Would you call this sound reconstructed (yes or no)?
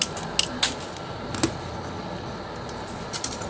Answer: no